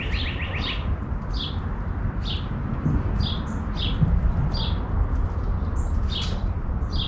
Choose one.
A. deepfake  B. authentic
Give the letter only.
B